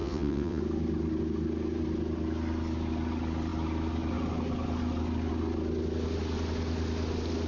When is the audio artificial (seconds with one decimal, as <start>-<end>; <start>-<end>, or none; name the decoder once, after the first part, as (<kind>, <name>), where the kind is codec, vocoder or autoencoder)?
0.0-0.6 (vocoder, WaveNeXt)